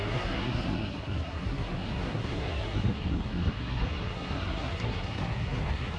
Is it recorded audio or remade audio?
remade